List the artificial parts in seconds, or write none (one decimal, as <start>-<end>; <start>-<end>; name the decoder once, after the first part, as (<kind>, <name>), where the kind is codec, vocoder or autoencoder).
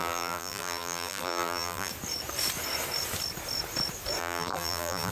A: 0.0-1.9 (vocoder, BigVGAN v2); 4.2-5.1